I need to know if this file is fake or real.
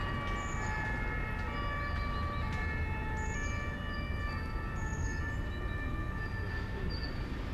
real